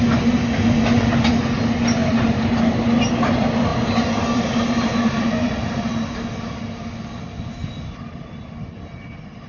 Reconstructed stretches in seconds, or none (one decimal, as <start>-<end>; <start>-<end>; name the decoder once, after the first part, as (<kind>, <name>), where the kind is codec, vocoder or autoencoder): 2.0-2.6 (vocoder, BigVGAN v2); 3.7-6.6